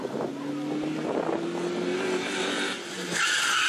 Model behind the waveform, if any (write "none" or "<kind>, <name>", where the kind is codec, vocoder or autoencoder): none